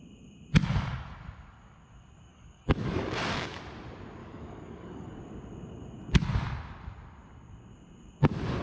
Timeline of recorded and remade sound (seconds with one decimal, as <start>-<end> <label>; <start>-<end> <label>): 0.0-2.3 recorded; 2.3-3.6 remade; 3.6-4.2 recorded; 4.2-5.2 remade; 5.2-8.6 recorded